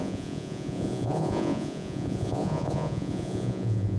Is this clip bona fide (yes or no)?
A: no